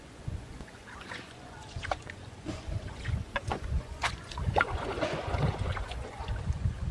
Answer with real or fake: fake